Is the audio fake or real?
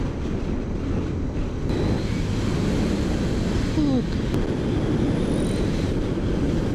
real